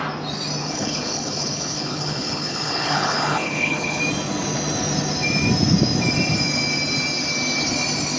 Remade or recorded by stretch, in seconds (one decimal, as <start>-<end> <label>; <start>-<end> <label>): 0.0-0.6 recorded; 0.6-4.0 remade; 4.0-8.2 recorded